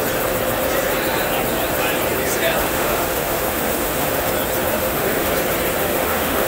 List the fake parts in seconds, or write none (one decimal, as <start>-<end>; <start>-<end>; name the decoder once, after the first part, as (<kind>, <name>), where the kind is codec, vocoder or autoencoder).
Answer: 2.6-4.3 (autoencoder, DAC-VAE); 4.7-5.3; 5.8-6.5